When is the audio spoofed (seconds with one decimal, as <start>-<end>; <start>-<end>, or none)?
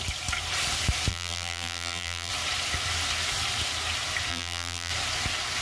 1.1-2.3; 4.3-4.9